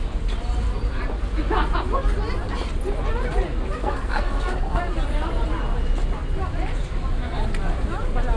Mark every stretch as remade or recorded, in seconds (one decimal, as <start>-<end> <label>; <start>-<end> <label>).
0.0-3.8 recorded; 3.8-4.8 remade; 4.8-8.4 recorded